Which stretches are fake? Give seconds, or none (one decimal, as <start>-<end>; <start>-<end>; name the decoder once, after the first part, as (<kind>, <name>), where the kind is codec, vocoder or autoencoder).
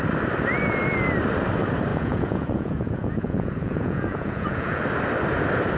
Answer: 1.9-4.8 (vocoder, Vocos)